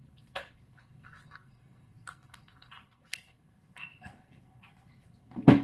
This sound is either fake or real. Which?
fake